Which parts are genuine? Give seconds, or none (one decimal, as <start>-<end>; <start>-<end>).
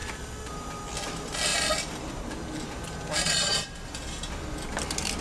0.0-1.5; 4.3-5.2